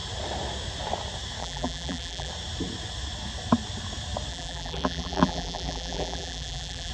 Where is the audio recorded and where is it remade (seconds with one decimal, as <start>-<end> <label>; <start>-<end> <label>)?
0.0-1.4 recorded; 1.4-2.3 remade; 2.3-4.3 recorded; 4.3-6.9 remade